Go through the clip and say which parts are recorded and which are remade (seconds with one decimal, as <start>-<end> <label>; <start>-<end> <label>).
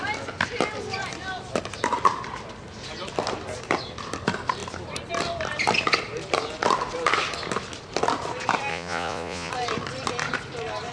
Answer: 0.0-8.7 recorded; 8.7-9.5 remade; 9.5-10.9 recorded